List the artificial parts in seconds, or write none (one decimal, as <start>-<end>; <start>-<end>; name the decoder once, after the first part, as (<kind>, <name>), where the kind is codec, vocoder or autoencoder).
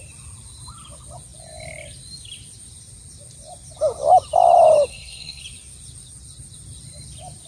4.9-5.4 (codec, SNAC)